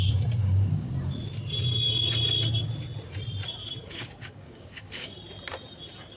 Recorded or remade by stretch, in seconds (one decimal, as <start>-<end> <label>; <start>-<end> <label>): 0.0-0.4 recorded; 0.4-0.9 remade; 0.9-3.8 recorded; 3.8-5.1 remade; 5.1-6.2 recorded